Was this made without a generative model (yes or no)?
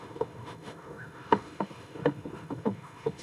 no